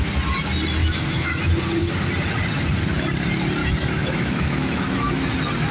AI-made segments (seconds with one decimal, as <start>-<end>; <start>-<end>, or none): 0.8-1.4; 3.6-5.3